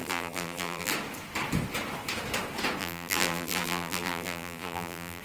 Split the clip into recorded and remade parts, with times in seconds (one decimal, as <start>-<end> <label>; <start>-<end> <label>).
0.0-0.9 remade; 0.9-2.8 recorded; 2.8-5.2 remade